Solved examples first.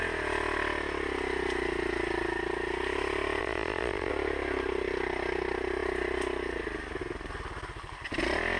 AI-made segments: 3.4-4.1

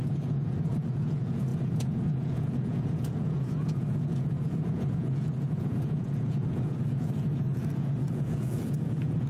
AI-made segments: 0.0-9.3

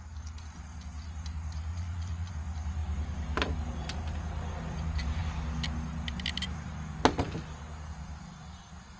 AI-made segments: 1.7-2.3

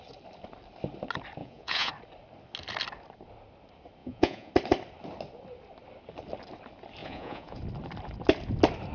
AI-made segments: 1.4-1.9; 4.0-4.5; 7.0-7.6

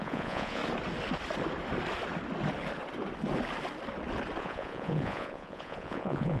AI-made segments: 0.0-0.6; 4.4-6.4

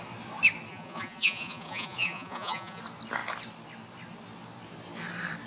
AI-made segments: 0.7-2.8